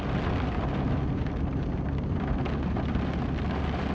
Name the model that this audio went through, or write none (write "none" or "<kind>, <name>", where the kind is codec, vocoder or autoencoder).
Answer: none